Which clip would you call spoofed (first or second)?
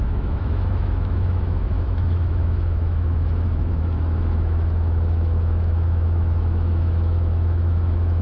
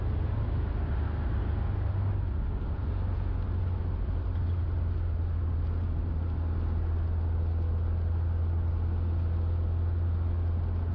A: first